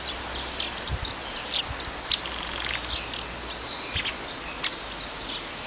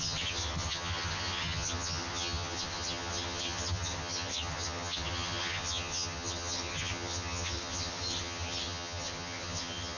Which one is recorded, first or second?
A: first